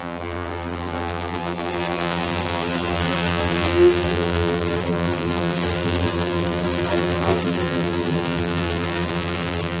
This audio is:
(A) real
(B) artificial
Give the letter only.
B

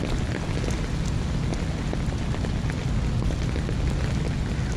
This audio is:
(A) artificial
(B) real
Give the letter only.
B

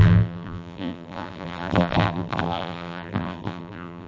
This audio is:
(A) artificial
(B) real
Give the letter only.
A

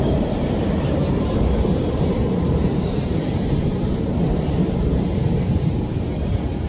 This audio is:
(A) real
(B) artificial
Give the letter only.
B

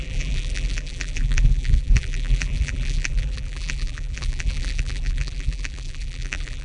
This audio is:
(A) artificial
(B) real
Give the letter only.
A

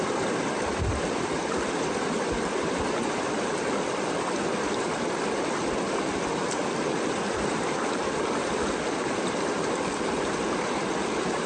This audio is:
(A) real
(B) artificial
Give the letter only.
B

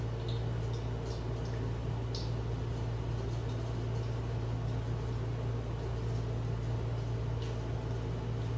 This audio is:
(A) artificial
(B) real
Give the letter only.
B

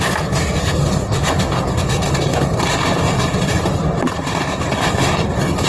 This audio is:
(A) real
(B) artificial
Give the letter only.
A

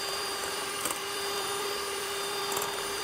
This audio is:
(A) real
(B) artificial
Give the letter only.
B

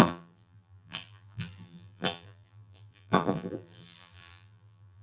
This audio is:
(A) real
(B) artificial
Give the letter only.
B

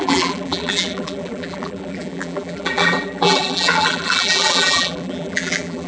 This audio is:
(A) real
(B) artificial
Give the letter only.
B